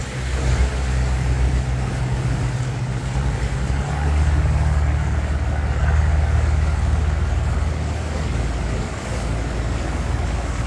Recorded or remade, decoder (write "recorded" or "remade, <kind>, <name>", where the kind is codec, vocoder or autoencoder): remade, codec, DAC